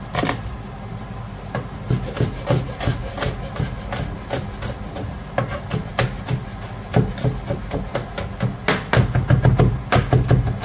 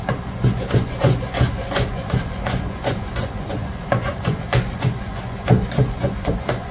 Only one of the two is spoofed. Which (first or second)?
second